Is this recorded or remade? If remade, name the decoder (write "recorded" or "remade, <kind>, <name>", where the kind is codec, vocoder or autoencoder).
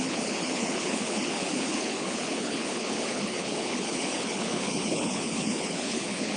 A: remade, codec, HILCodec